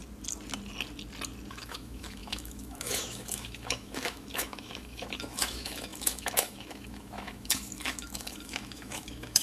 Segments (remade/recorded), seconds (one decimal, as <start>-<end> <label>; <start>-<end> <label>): 0.0-1.5 recorded; 1.5-9.4 remade